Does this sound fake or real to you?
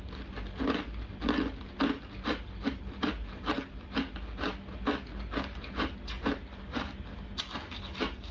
real